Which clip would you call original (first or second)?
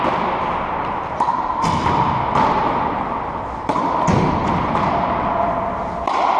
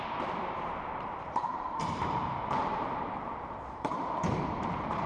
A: first